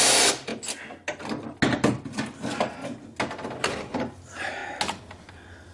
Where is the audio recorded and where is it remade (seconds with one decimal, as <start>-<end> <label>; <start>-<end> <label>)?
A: 0.0-0.5 remade; 0.5-2.0 recorded; 2.0-2.8 remade; 2.8-3.7 recorded; 3.7-4.6 remade; 4.6-5.7 recorded